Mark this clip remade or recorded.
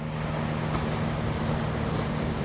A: recorded